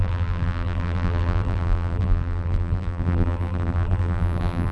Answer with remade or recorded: remade